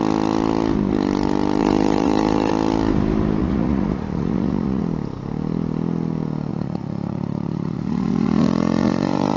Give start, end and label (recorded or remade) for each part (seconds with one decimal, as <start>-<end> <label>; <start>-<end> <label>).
0.0-1.6 recorded; 1.6-2.5 remade; 2.5-3.4 recorded; 3.4-4.8 remade; 4.8-6.5 recorded; 6.5-9.4 remade